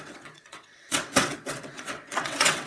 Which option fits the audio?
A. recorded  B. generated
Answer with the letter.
B